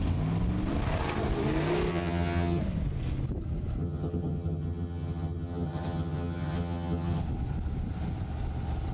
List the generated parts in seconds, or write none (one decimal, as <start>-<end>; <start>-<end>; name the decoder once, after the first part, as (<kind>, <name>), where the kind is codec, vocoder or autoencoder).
1.9-2.6 (vocoder, HiFi-GAN); 3.8-7.2